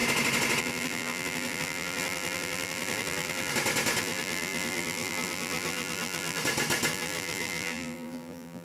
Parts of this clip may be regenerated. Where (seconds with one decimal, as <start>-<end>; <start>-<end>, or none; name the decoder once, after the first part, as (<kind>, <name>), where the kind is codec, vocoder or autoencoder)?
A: 0.6-3.5 (vocoder, BigVGAN v2); 4.0-6.4; 6.9-8.6